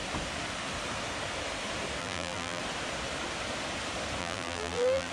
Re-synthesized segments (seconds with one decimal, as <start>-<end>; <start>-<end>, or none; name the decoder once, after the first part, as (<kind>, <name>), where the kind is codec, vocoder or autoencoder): 2.0-2.6 (vocoder, BigVGAN v2); 4.2-5.1